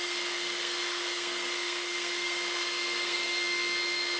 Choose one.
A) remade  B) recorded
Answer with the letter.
A